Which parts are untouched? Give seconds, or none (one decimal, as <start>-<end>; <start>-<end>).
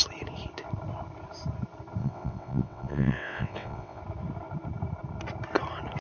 0.0-2.0; 4.0-6.0